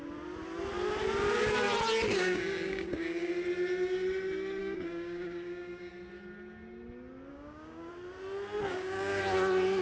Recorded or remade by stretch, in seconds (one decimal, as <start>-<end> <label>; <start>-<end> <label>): 0.0-2.1 recorded; 2.1-3.3 remade; 3.3-4.6 recorded; 4.6-5.9 remade; 5.9-7.3 recorded; 7.3-7.9 remade; 7.9-8.7 recorded; 8.7-9.2 remade; 9.2-9.8 recorded